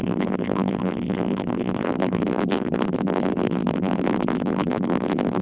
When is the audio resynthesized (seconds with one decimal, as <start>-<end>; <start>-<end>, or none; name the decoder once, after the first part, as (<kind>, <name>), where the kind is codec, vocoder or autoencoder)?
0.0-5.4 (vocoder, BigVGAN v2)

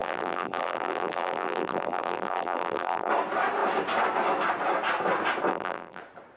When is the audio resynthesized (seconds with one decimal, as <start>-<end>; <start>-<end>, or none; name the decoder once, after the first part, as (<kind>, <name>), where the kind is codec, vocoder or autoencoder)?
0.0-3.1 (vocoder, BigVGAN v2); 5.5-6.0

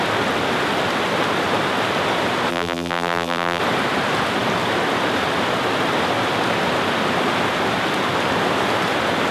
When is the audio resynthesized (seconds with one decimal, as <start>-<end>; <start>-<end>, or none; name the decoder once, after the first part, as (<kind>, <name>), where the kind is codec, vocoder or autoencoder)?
2.5-3.6 (vocoder, BigVGAN v2)

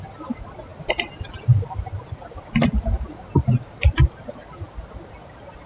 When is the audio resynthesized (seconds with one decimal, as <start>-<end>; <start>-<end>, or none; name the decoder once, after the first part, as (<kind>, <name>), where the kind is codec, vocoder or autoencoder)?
none

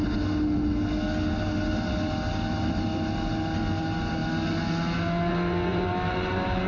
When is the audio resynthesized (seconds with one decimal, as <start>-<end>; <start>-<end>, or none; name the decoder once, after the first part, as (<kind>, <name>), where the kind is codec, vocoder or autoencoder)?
5.7-6.7 (vocoder, BigVGAN v2)

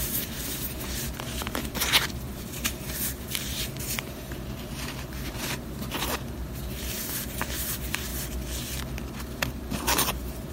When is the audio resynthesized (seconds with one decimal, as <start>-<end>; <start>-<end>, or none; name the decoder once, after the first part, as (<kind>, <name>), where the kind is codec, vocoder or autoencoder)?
0.0-8.1 (vocoder, BigVGAN v2); 9.7-10.5